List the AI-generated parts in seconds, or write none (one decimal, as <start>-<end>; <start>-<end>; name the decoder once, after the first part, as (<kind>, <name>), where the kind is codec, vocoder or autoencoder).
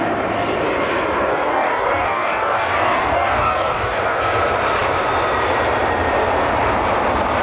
1.3-4.2 (codec, DAC)